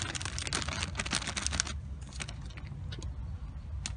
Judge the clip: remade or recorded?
recorded